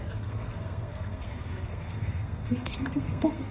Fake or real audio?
fake